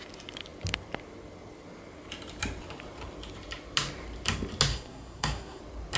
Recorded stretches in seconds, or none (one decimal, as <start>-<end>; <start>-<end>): 0.0-4.7; 5.6-6.0